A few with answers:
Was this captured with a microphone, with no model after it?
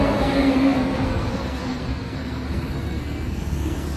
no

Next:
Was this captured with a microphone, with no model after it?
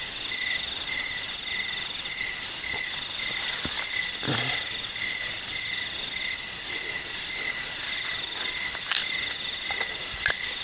yes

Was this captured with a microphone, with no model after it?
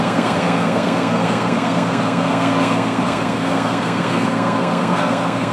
no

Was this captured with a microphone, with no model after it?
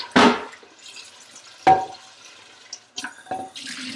yes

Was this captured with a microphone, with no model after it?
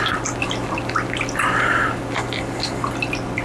yes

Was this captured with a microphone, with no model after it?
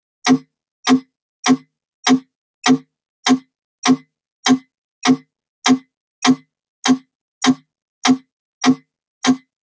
yes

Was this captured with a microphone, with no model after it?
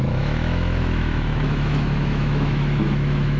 no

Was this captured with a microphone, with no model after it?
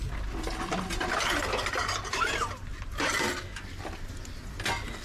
yes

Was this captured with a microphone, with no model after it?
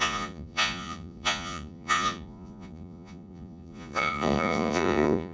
no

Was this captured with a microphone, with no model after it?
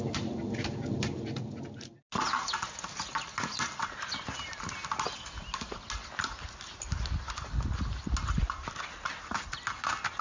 yes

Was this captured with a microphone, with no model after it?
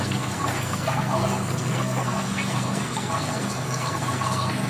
no